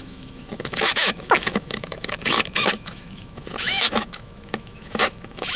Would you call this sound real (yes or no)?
no